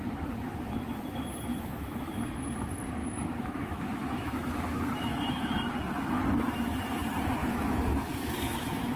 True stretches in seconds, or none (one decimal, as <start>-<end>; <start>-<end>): 0.0-1.5; 2.2-3.0; 5.7-7.4